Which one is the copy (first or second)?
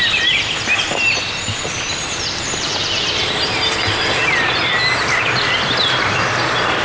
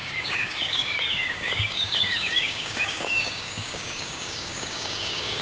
second